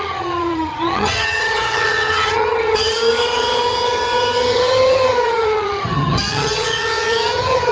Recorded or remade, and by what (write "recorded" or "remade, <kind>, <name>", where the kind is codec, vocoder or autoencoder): remade, vocoder, HiFi-GAN